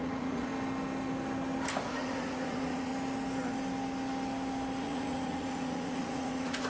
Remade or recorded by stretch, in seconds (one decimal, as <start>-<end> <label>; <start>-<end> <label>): 0.0-0.5 remade; 0.5-1.8 recorded; 1.8-2.9 remade; 2.9-4.8 recorded; 4.8-6.7 remade